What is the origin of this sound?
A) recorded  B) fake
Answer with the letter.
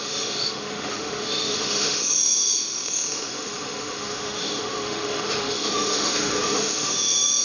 B